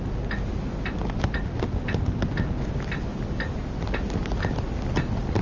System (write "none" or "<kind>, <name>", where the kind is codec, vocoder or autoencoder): none